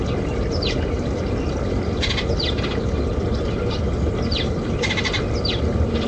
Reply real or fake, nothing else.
real